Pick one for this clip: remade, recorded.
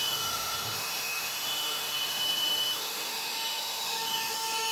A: remade